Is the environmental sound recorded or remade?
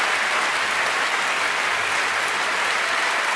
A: recorded